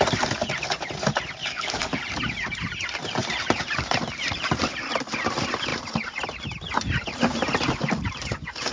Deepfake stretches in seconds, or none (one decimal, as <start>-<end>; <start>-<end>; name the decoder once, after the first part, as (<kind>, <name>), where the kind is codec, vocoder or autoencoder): 1.4-2.0 (codec, DAC)